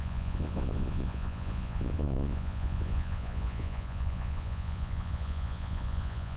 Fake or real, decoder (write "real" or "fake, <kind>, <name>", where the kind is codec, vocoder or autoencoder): fake, vocoder, Vocos